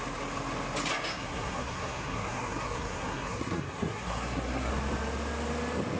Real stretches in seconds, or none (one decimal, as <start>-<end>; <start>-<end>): 0.0-1.1; 4.7-6.0